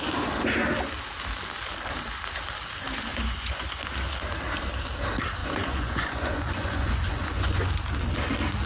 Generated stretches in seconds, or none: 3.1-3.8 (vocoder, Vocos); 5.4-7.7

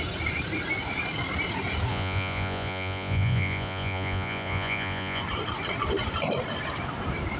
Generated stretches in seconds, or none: 1.9-5.2 (vocoder, Vocos)

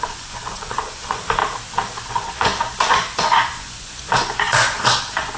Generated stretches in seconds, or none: 0.0-1.4 (vocoder, Vocos); 2.1-5.4

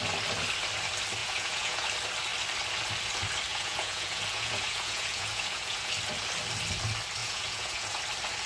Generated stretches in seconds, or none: 1.2-1.9 (vocoder, Vocos); 3.5-5.9; 7.2-8.0